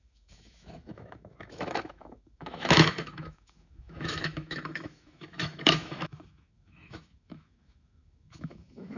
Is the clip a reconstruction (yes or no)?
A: yes